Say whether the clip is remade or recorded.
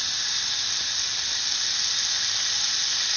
recorded